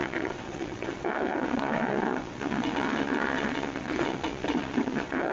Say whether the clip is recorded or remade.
remade